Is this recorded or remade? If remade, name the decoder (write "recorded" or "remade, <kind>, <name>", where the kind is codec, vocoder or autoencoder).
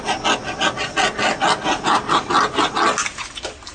recorded